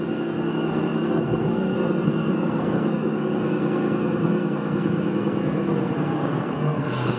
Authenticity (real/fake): fake